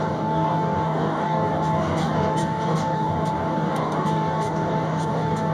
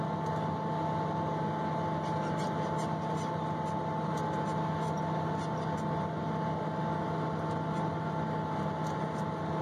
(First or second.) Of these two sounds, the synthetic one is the first